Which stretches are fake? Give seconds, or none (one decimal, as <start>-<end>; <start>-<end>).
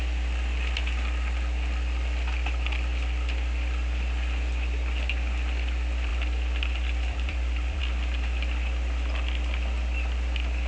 6.1-7.8